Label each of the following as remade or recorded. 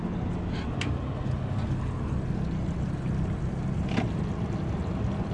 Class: recorded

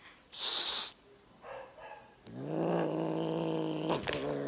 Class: recorded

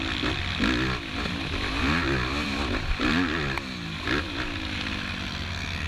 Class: recorded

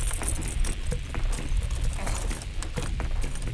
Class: recorded